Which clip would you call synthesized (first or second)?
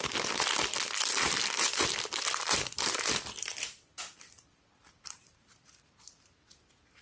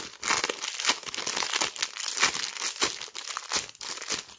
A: first